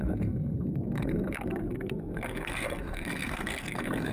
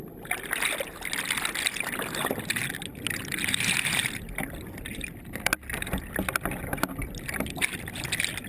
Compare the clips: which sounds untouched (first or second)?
second